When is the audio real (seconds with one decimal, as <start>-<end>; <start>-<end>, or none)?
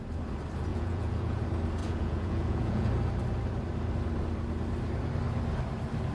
0.0-0.7; 1.4-1.8; 2.9-6.1